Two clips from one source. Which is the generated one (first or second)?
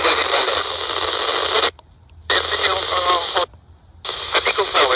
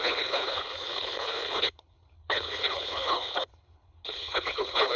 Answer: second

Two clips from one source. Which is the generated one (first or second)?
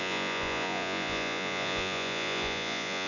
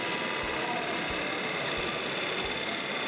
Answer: first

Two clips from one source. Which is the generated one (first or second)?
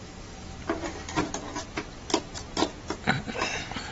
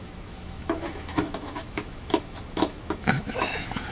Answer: second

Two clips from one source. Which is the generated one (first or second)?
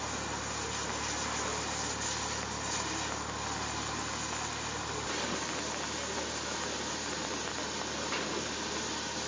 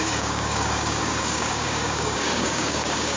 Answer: second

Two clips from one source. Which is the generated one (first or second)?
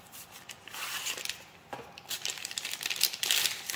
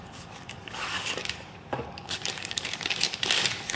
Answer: second